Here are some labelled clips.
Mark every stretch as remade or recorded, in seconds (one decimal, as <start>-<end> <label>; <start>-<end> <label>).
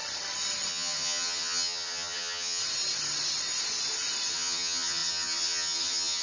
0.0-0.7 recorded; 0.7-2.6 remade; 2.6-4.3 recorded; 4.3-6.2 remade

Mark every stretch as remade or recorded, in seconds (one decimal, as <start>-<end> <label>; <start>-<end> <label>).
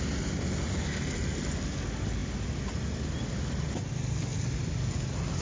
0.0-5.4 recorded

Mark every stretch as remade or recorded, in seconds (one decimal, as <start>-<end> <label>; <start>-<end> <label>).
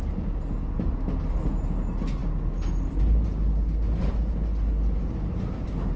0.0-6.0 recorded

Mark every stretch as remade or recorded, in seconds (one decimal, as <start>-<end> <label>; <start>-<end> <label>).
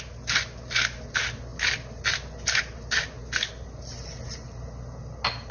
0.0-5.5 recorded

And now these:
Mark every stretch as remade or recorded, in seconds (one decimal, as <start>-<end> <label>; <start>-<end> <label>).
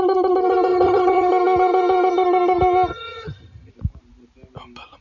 0.0-0.7 recorded; 0.7-1.3 remade; 1.3-2.9 recorded; 2.9-3.7 remade; 3.7-5.0 recorded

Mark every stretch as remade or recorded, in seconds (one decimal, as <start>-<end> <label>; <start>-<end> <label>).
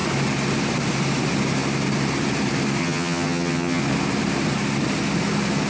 0.0-2.8 recorded; 2.8-3.8 remade; 3.8-5.7 recorded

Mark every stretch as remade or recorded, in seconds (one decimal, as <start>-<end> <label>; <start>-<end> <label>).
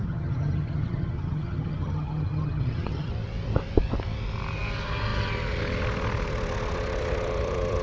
0.0-3.1 remade; 3.1-7.8 recorded